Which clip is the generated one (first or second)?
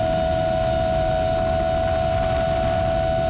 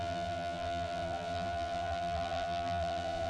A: second